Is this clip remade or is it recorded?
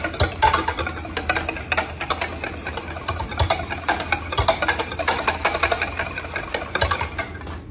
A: recorded